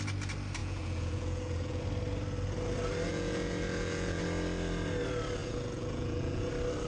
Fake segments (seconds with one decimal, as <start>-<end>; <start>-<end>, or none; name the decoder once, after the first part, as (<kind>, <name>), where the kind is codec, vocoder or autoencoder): 0.6-1.8 (vocoder, Vocos); 3.1-4.2; 5.4-6.5